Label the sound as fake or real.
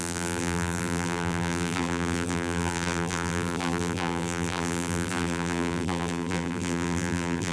fake